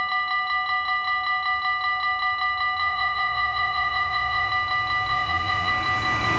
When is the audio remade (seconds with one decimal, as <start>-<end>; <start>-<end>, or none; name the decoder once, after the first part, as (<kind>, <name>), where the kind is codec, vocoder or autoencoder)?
2.8-4.5 (vocoder, Vocos); 5.1-5.7